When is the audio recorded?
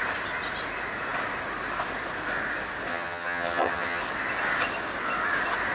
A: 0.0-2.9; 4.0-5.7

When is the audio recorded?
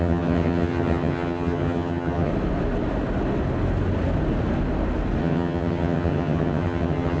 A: 2.3-5.2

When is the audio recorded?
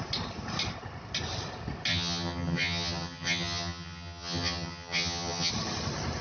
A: 0.0-1.9; 5.5-6.2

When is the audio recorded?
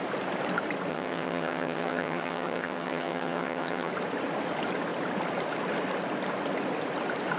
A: 0.0-0.9; 3.9-7.4